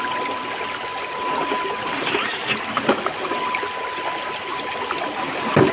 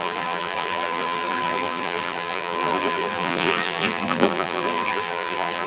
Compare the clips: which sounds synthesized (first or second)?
second